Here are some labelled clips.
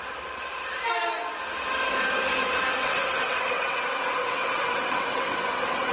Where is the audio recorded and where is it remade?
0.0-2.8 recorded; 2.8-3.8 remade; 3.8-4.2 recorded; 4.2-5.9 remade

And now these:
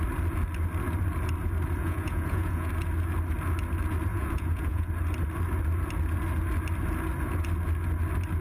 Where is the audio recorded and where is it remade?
0.0-1.8 recorded; 1.8-2.7 remade; 2.7-4.1 recorded; 4.1-4.9 remade; 4.9-8.4 recorded

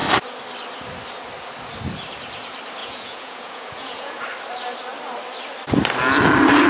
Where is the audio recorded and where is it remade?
0.0-2.8 recorded; 2.8-4.2 remade; 4.2-6.7 recorded

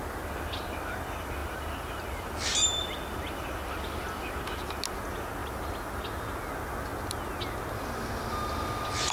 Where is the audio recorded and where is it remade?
0.0-1.4 recorded; 1.4-2.0 remade; 2.0-5.4 recorded; 5.4-6.0 remade; 6.0-9.1 recorded

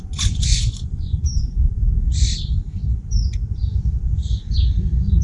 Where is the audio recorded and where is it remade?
0.0-1.8 remade; 1.8-5.2 recorded

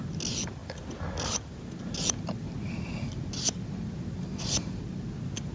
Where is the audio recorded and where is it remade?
0.0-5.5 recorded